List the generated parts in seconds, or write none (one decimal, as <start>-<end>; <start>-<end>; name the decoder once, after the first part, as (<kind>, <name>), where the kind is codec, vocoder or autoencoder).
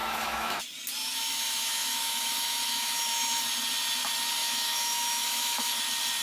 0.0-0.6 (autoencoder, DAC-VAE); 1.0-3.4; 4.4-5.7